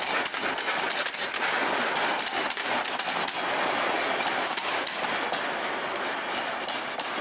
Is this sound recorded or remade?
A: recorded